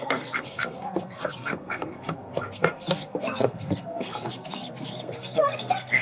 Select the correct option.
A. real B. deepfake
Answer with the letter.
B